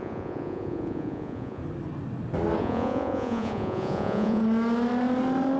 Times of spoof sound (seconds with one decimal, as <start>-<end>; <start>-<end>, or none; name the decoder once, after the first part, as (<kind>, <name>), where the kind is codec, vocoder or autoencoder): 0.0-1.6 (vocoder, Vocos); 2.6-4.4